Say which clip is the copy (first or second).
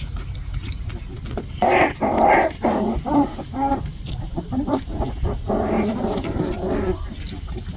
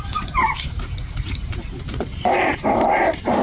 second